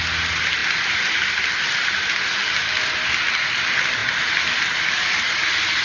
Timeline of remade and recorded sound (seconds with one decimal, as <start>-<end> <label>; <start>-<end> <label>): 0.0-5.8 recorded